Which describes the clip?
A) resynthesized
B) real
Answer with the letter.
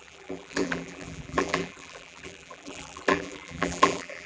A